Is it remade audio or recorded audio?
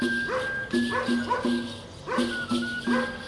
recorded